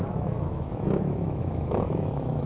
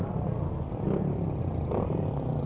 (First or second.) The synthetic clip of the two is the first